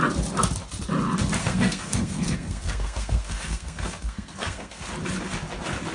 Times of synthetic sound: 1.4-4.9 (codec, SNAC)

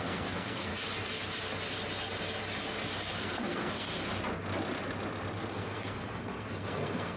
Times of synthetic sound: 0.0-0.7 (codec, SNAC); 3.0-3.9; 5.5-7.2

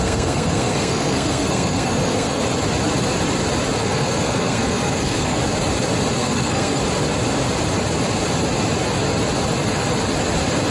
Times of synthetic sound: 0.0-2.4 (codec, SNAC); 3.8-5.4; 6.1-6.8

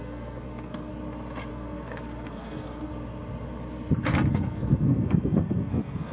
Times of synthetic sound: 0.0-0.9 (codec, SNAC); 1.5-2.9; 4.3-6.1

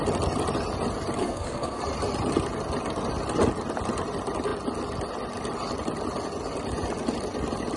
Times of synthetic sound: 1.2-1.8 (codec, SNAC)